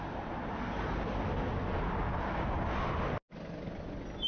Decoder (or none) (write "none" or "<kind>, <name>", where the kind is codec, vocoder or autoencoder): none